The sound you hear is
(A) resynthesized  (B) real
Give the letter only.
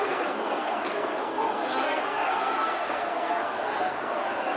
A